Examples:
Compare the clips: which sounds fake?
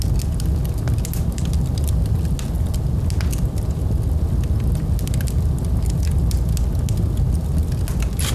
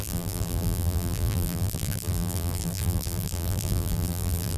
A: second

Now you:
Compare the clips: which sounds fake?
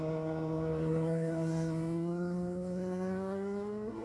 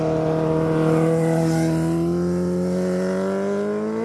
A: first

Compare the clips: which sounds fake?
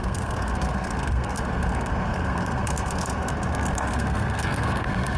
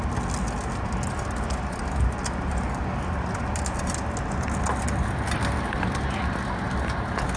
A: first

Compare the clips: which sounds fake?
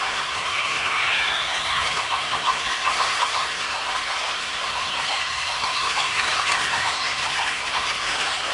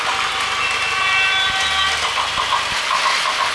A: first